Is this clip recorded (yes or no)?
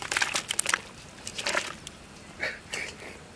yes